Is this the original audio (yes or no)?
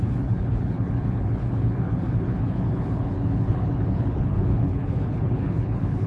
no